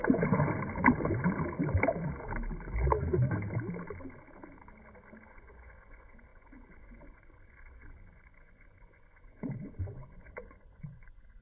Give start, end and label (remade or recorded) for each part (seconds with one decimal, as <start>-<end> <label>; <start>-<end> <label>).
0.0-5.2 recorded; 5.2-11.4 remade